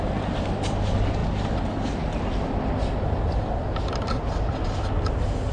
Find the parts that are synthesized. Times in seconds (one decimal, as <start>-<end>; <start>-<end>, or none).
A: none